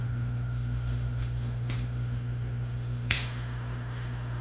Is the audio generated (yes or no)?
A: yes